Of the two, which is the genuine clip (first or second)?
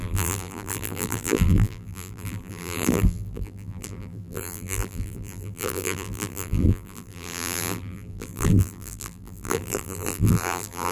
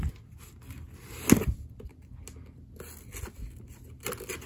second